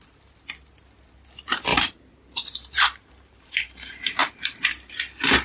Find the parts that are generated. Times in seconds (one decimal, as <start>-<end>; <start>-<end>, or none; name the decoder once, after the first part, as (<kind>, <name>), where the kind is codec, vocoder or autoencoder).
1.7-4.9 (vocoder, BigVGAN v2)